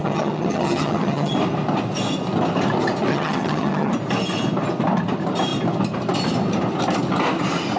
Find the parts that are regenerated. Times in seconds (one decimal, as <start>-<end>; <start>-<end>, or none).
0.0-1.3; 3.1-3.9